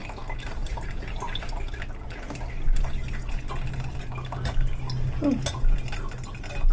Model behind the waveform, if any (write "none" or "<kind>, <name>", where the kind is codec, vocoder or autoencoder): none